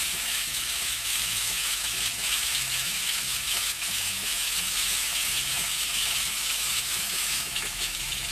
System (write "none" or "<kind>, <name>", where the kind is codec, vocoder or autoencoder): autoencoder, DAC-VAE